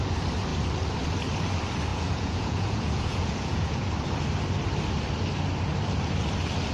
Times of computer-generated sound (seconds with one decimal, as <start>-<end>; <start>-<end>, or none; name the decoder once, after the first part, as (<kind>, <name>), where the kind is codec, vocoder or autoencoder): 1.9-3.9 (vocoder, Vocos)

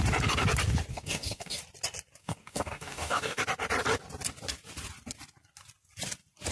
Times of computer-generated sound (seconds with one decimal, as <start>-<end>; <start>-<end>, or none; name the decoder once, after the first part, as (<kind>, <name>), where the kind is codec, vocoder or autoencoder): 0.9-1.6 (codec, DAC); 2.2-3.4

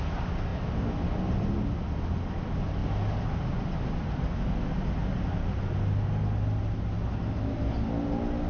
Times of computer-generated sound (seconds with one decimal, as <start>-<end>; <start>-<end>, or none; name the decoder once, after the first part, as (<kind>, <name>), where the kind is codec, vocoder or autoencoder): none